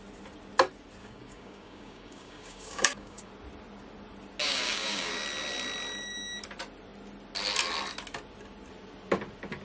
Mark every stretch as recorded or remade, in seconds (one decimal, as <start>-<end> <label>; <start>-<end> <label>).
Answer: 0.0-1.0 recorded; 1.0-3.3 remade; 3.3-4.4 recorded; 4.4-5.1 remade; 5.1-9.6 recorded